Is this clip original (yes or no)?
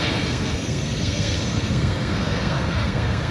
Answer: no